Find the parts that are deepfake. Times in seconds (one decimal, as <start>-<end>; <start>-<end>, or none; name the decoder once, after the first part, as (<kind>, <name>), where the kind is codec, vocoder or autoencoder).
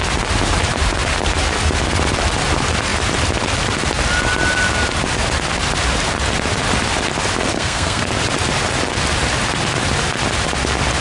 7.5-8.1 (codec, SNAC)